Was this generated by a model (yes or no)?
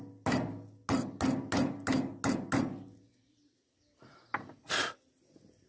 no